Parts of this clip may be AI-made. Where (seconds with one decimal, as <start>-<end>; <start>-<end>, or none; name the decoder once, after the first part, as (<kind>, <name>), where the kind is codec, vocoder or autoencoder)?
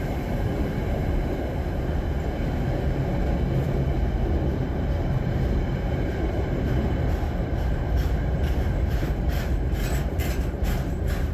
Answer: 0.0-1.0 (vocoder, BigVGAN v2); 4.5-11.3